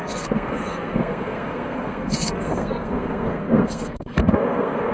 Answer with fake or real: fake